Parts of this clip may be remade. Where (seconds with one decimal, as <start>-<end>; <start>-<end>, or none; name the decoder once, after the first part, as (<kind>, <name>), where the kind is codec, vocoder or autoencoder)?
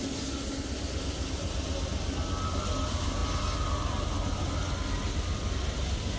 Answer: none